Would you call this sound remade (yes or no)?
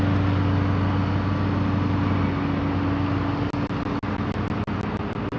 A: no